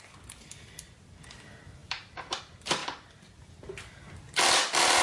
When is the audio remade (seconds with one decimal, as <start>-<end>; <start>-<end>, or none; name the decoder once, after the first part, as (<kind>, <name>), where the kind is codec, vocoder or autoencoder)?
2.8-3.5 (vocoder, BigVGAN v2)